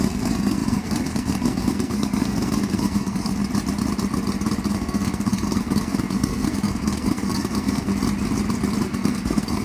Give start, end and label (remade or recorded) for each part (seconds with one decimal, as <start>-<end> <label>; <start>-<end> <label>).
0.0-3.4 remade; 3.4-4.7 recorded; 4.7-7.9 remade; 7.9-8.8 recorded; 8.8-9.6 remade